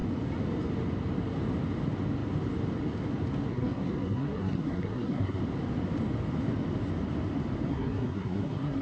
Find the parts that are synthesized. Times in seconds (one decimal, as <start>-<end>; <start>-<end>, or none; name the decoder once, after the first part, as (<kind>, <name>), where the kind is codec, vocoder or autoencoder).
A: 3.5-5.4 (codec, SNAC); 7.7-8.8